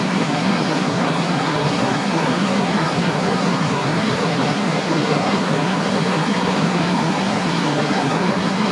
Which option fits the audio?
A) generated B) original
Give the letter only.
A